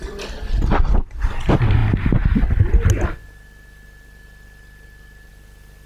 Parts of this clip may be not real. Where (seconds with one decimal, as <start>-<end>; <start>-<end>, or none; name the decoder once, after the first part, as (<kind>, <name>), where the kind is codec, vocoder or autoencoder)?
none